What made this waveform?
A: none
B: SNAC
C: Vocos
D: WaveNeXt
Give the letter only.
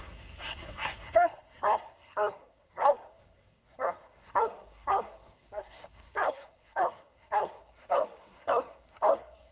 B